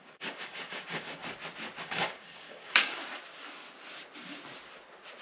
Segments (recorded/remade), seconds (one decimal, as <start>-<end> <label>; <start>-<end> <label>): 0.0-1.2 remade; 1.2-1.8 recorded; 1.8-3.0 remade; 3.0-5.2 recorded